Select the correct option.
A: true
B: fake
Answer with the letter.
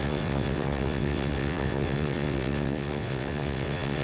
B